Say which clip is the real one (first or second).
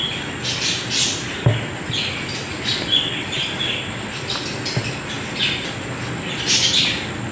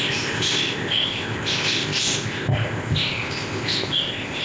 first